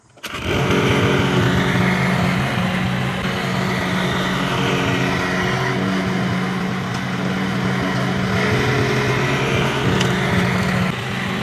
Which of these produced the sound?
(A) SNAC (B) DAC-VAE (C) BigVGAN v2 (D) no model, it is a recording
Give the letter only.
D